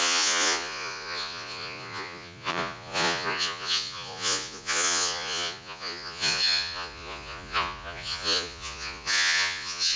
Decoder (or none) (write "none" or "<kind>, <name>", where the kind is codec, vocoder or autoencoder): vocoder, Vocos